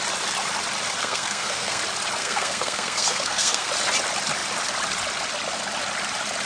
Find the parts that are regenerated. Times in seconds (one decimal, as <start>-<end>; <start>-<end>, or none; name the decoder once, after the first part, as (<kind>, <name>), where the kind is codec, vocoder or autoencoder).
1.0-1.8 (codec, SNAC); 2.2-3.7